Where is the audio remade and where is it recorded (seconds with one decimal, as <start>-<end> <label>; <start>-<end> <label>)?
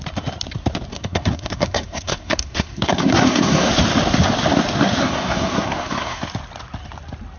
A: 0.0-0.9 recorded; 0.9-3.7 remade; 3.7-5.0 recorded; 5.0-6.2 remade; 6.2-7.4 recorded